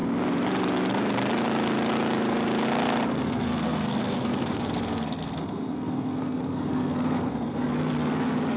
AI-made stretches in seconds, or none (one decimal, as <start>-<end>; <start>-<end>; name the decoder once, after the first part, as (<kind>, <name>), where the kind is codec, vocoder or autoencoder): 3.2-8.6 (codec, SNAC)